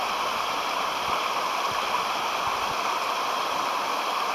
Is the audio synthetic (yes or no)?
no